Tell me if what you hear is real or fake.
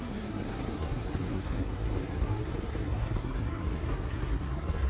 fake